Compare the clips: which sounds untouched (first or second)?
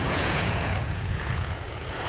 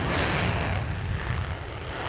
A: second